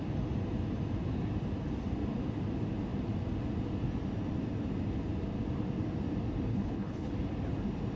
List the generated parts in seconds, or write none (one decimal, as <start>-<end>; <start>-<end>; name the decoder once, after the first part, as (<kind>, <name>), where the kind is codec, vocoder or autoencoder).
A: 6.5-7.1 (codec, HILCodec)